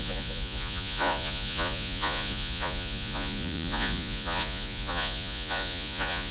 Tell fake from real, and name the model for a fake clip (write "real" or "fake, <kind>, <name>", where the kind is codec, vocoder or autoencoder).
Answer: fake, vocoder, Vocos